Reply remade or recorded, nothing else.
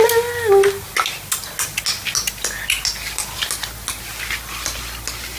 recorded